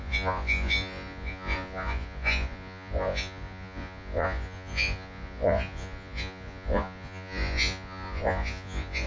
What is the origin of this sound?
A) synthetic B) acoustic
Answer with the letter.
A